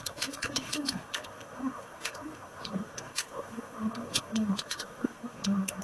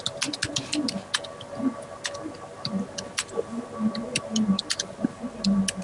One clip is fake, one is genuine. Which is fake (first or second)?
first